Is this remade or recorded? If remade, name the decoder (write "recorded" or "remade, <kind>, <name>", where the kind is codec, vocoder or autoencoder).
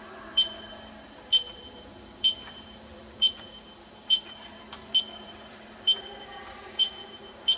remade, vocoder, BigVGAN v2